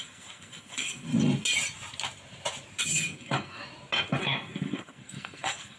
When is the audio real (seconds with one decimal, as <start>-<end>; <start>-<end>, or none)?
1.1-2.8; 3.6-4.2